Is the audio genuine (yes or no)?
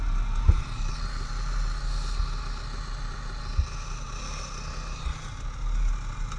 yes